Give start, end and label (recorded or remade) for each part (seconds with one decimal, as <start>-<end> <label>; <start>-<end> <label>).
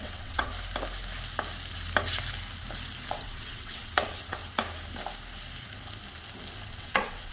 0.0-0.5 remade; 0.5-3.1 recorded; 3.1-4.4 remade; 4.4-6.7 recorded; 6.7-7.3 remade